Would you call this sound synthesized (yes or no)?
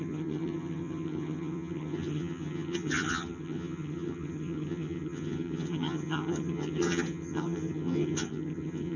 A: yes